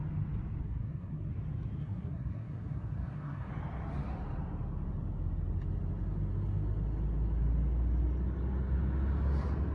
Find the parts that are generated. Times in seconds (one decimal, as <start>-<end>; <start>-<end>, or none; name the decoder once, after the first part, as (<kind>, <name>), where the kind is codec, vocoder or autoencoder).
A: 0.6-1.3 (codec, SNAC); 1.8-3.5